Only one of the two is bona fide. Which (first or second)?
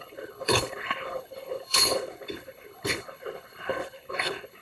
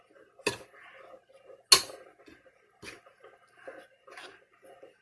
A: second